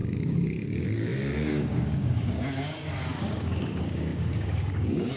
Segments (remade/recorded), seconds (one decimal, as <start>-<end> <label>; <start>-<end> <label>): 0.0-5.2 remade